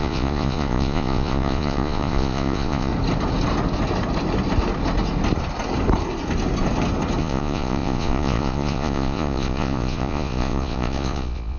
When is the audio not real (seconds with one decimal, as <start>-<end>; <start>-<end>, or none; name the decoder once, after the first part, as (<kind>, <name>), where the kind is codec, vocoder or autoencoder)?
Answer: 0.0-2.9 (vocoder, Vocos); 7.2-11.6